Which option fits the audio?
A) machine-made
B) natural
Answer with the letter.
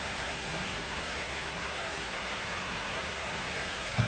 A